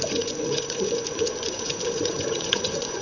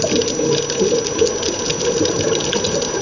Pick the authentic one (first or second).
second